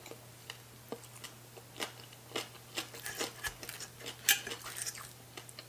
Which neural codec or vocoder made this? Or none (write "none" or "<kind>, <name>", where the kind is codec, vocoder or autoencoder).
none